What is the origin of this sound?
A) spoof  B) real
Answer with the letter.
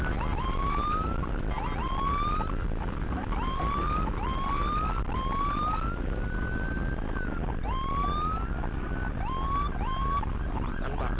B